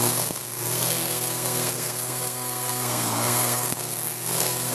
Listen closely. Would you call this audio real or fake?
fake